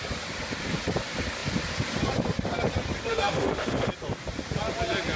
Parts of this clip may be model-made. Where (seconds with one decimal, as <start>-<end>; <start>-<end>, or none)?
3.1-3.9